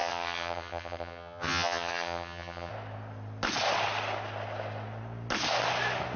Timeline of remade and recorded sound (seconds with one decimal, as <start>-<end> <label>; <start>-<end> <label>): 0.0-2.7 remade; 2.7-6.2 recorded